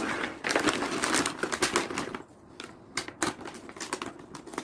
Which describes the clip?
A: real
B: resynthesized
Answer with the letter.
A